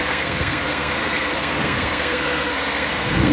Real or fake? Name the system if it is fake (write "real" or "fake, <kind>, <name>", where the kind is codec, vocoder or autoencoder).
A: fake, codec, SNAC